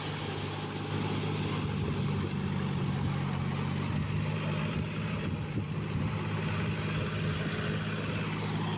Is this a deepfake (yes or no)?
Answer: no